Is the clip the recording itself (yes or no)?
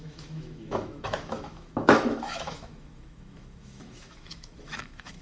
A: no